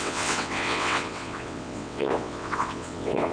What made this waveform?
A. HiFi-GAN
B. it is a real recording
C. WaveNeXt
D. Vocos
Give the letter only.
C